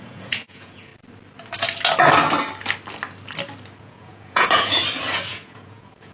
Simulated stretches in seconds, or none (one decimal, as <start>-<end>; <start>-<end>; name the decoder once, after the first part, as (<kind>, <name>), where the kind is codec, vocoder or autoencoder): 0.0-0.9 (vocoder, Vocos); 3.8-4.8; 5.3-6.1